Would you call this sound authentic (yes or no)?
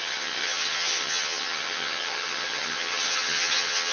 no